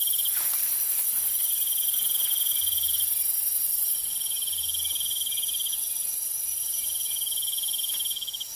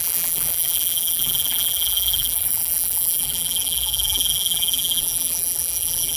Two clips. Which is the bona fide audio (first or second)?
first